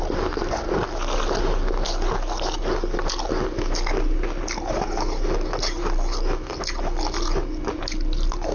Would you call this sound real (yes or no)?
yes